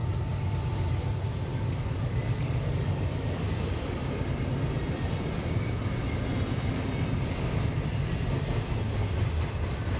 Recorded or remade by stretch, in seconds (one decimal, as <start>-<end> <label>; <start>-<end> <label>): 0.0-1.5 recorded; 1.5-3.4 remade; 3.4-10.0 recorded